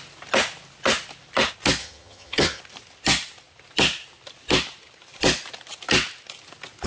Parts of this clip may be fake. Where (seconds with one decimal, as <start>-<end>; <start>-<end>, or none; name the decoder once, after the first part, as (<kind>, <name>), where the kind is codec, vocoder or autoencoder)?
1.8-2.6 (vocoder, HiFi-GAN)